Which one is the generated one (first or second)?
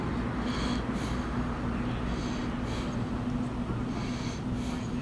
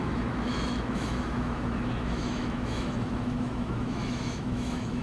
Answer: second